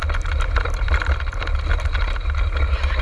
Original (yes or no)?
yes